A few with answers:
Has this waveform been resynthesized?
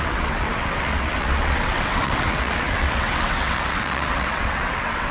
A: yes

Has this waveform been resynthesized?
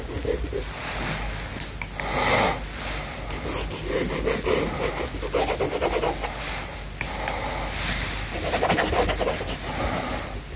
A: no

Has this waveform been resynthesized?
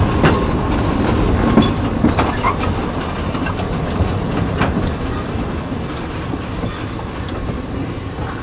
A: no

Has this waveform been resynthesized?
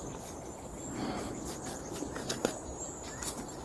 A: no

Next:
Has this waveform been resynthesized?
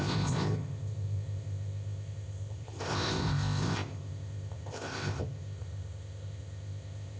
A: yes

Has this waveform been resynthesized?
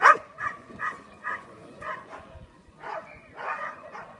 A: yes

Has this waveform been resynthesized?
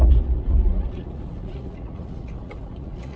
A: yes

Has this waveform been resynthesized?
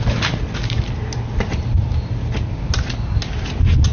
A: no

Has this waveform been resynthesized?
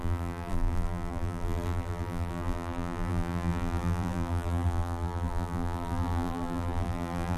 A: yes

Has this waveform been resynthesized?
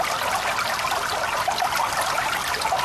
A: no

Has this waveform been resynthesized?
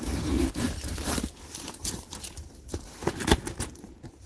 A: yes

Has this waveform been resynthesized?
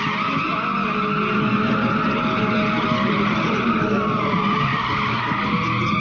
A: no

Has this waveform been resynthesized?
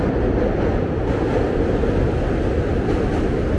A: no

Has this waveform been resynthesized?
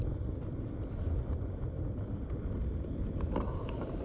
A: no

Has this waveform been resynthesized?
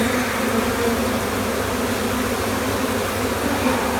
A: no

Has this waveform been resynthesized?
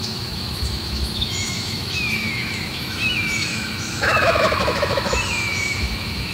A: yes